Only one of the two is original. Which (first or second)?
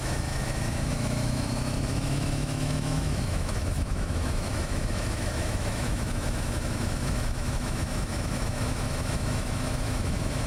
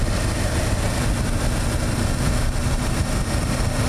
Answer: second